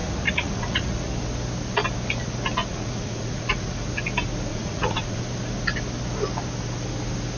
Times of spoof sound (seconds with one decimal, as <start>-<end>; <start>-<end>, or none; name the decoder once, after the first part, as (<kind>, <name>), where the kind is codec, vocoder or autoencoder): 0.0-1.1 (vocoder, Vocos); 2.6-3.8; 4.5-5.2